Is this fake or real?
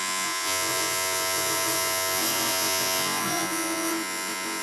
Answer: fake